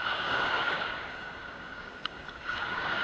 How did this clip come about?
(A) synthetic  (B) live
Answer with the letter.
A